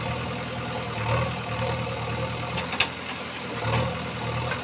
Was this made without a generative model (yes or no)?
yes